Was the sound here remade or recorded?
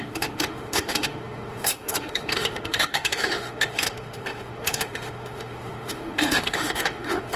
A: remade